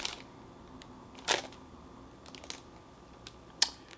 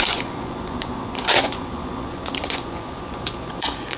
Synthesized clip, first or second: second